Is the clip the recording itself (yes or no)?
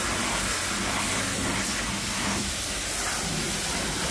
yes